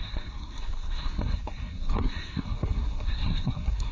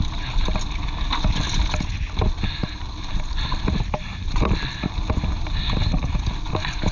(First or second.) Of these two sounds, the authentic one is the second